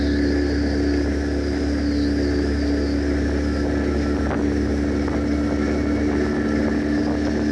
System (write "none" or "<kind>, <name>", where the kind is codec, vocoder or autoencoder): none